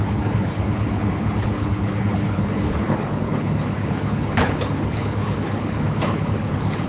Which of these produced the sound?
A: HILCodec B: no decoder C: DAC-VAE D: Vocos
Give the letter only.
A